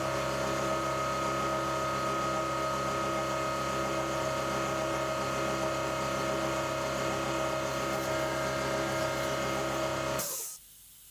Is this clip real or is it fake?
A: real